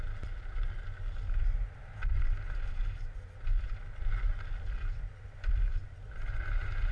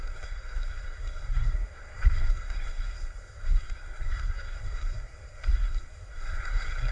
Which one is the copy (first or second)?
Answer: second